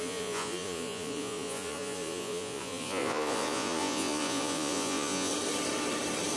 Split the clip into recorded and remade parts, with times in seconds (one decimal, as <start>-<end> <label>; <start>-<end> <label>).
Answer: 0.0-5.3 remade; 5.3-6.4 recorded